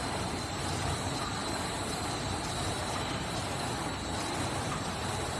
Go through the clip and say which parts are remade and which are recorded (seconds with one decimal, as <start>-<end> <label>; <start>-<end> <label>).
0.0-5.4 remade